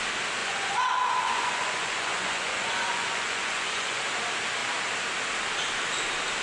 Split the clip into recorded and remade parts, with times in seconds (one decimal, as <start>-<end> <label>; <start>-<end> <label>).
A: 0.0-0.4 recorded; 0.4-4.0 remade; 4.0-6.4 recorded